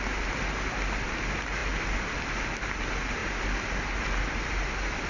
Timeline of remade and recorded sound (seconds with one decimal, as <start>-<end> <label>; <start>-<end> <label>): 0.0-5.1 recorded

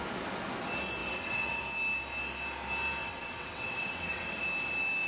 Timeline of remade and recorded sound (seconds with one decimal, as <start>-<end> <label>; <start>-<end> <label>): 0.0-1.0 recorded; 1.0-1.6 remade; 1.6-3.0 recorded; 3.0-4.4 remade; 4.4-5.1 recorded

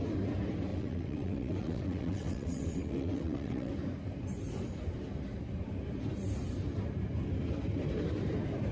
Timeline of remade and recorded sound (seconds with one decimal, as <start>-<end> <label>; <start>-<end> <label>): 0.0-0.7 recorded; 0.7-3.7 remade; 3.7-8.7 recorded